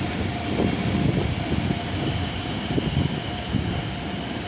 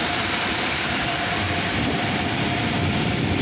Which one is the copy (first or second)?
second